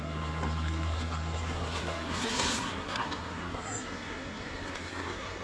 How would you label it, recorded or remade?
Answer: remade